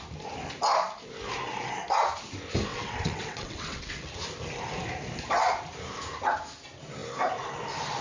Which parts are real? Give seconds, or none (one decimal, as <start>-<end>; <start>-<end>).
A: 0.0-2.7; 4.1-8.0